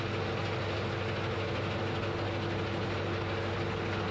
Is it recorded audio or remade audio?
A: recorded